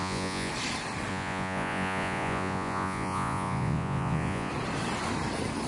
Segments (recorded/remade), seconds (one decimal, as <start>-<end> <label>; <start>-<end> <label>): 0.0-0.5 remade; 0.5-1.1 recorded; 1.1-4.5 remade; 4.5-5.7 recorded